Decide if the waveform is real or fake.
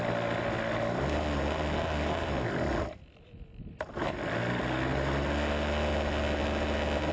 real